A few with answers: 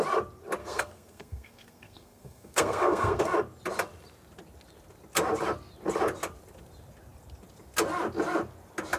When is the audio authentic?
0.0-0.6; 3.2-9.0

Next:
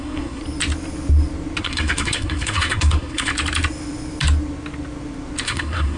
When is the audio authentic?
0.4-1.6; 3.3-5.4

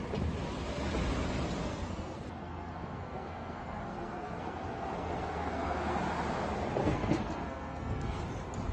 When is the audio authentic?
0.0-1.6; 6.0-6.8; 8.2-8.7

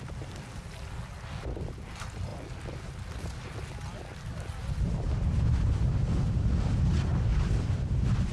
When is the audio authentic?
0.0-8.3

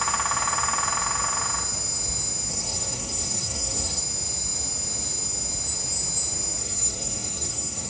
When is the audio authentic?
0.0-2.5; 4.0-6.6

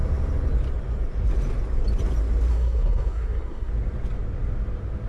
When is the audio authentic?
0.0-2.5; 3.7-5.1